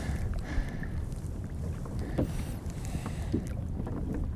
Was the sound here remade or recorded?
remade